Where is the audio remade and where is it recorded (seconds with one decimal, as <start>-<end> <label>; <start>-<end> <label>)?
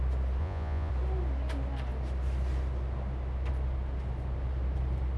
0.0-0.4 recorded; 0.4-0.9 remade; 0.9-5.2 recorded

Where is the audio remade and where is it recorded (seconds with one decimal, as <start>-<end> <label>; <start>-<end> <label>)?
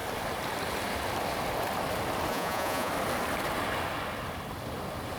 0.0-2.3 recorded; 2.3-2.9 remade; 2.9-5.2 recorded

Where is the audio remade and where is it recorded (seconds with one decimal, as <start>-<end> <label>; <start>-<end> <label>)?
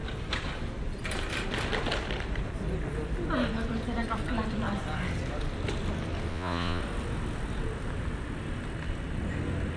0.0-6.3 recorded; 6.3-6.8 remade; 6.8-9.8 recorded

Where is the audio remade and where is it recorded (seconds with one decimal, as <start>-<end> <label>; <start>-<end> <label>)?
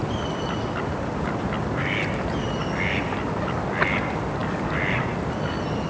0.0-5.9 recorded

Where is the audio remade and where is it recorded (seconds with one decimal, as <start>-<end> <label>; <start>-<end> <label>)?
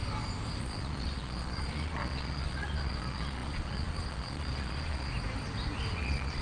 0.0-0.6 recorded; 0.6-5.1 remade; 5.1-5.9 recorded; 5.9-6.4 remade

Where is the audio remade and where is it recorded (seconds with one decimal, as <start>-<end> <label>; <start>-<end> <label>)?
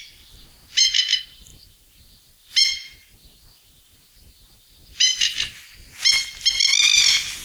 0.0-7.4 recorded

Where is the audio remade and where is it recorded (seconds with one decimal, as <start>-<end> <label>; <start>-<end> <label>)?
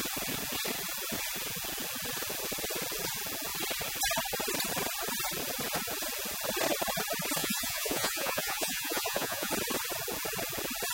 0.0-7.4 recorded; 7.4-9.5 remade; 9.5-10.9 recorded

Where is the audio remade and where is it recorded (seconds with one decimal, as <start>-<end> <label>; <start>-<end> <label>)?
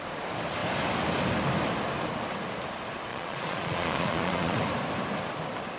0.0-3.1 recorded; 3.1-4.6 remade; 4.6-5.8 recorded